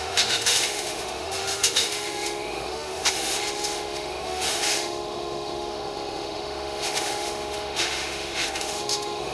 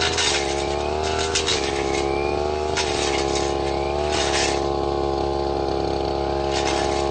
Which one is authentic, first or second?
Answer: second